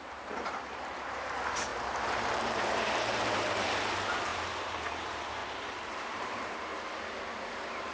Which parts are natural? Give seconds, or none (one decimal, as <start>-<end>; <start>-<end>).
6.7-7.5

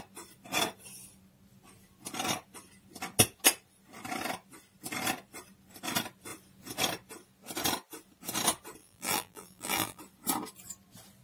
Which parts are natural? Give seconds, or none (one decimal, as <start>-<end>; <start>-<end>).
0.0-8.8; 10.0-11.2

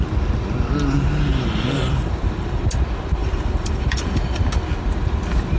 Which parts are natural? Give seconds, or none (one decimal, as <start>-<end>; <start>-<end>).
0.0-1.3; 2.6-3.2; 4.4-5.6

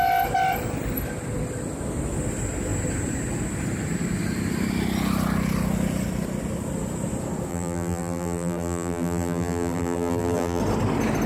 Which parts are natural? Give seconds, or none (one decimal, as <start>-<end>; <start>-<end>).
0.0-7.5; 10.6-11.3

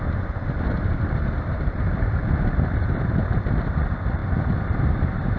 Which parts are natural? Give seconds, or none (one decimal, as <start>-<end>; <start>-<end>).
2.2-2.9

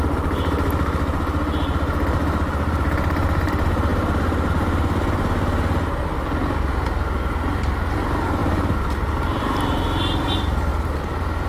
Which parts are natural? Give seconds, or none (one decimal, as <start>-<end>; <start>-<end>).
0.0-2.2; 3.5-8.4; 9.4-10.7